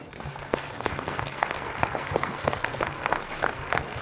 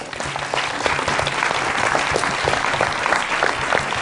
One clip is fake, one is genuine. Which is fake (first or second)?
first